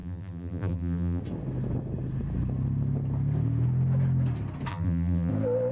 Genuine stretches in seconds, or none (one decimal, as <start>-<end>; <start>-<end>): 1.2-4.7; 5.3-5.7